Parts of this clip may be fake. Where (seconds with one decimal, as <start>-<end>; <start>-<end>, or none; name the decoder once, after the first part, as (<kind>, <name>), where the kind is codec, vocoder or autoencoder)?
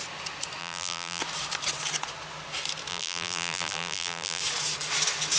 0.6-1.2 (vocoder, BigVGAN v2); 2.9-4.4